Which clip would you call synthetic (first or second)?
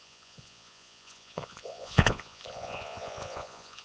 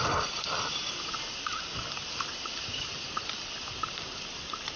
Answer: first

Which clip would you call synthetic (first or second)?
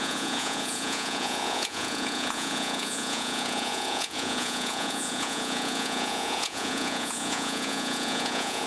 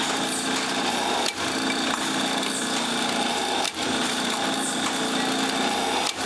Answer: first